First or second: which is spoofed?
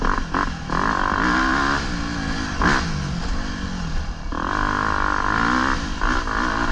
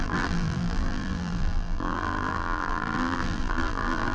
second